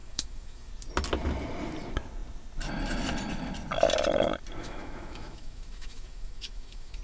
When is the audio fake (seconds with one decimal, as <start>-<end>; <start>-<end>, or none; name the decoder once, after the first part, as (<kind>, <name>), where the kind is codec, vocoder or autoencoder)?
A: 0.0-0.7 (autoencoder, DAC-VAE); 4.6-7.0